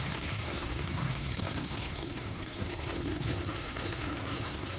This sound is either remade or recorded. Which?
remade